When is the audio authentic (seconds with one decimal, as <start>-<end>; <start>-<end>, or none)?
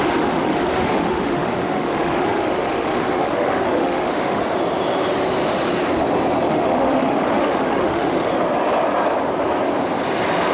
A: 4.4-6.5; 8.3-10.5